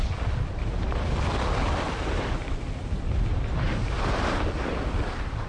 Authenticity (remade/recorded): recorded